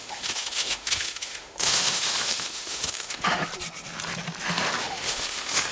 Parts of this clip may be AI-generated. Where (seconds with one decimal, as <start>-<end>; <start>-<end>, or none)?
0.0-3.4; 4.8-5.7